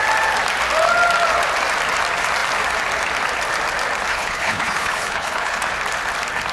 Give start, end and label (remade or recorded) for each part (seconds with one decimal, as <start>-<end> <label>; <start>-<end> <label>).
0.0-4.1 recorded; 4.1-5.6 remade; 5.6-6.5 recorded